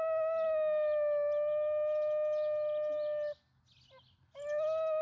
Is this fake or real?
real